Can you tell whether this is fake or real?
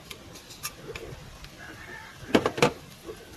real